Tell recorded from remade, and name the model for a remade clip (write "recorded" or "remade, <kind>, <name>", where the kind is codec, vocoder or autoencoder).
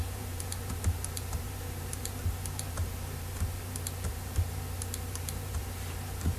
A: remade, vocoder, BigVGAN v2